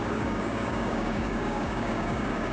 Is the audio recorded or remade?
remade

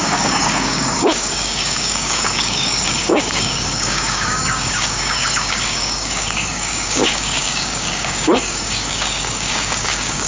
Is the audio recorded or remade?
remade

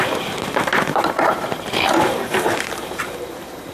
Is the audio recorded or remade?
remade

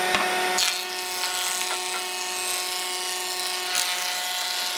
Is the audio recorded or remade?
recorded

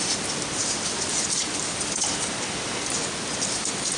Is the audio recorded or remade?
recorded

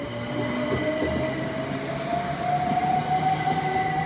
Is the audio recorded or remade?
recorded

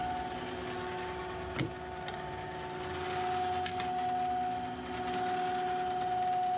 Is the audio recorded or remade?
recorded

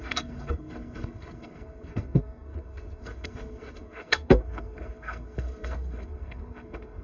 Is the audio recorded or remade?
remade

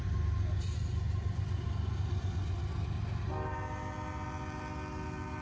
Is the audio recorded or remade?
recorded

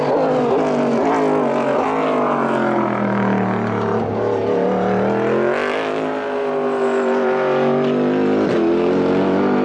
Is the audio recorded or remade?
recorded